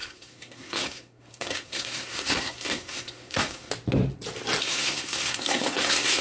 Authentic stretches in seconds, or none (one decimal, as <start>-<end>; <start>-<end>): 3.7-4.6